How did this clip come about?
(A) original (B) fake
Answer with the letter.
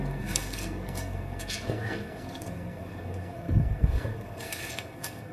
B